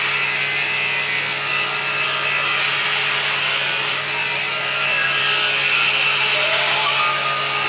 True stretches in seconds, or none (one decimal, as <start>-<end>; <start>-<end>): 0.0-2.9; 3.8-7.7